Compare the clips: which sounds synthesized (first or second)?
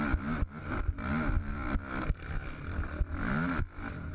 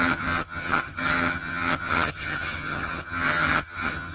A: second